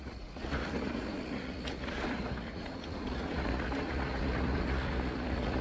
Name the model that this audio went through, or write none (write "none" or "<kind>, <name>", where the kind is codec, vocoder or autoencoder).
vocoder, Vocos